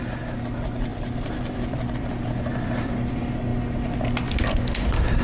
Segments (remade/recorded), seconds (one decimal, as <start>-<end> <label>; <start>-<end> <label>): 0.0-0.9 recorded; 0.9-2.1 remade; 2.1-5.2 recorded